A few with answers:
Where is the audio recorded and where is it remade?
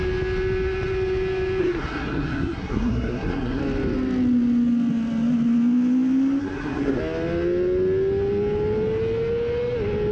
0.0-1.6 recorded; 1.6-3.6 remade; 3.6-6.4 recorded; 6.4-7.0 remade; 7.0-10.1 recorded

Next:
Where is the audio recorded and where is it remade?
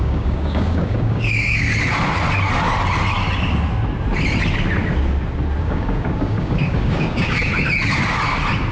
0.0-1.7 remade; 1.7-5.6 recorded; 5.6-7.5 remade; 7.5-8.7 recorded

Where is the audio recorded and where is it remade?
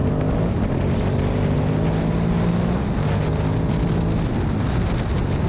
0.0-5.5 recorded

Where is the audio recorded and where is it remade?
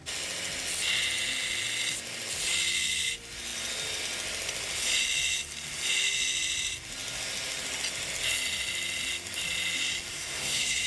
0.0-10.1 recorded; 10.1-10.9 remade